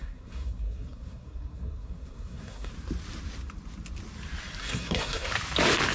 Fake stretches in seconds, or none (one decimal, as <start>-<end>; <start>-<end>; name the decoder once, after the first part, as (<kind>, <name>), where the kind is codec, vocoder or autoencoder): 0.0-2.7 (codec, SNAC); 4.6-5.3